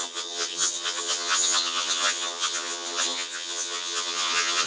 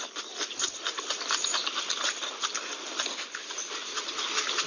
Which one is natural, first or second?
second